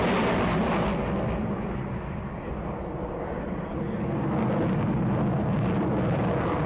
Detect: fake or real real